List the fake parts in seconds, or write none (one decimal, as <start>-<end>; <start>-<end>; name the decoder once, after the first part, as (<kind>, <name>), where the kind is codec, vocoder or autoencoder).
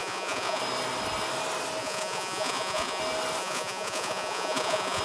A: 0.0-0.6 (vocoder, Vocos); 1.8-3.0; 3.4-5.0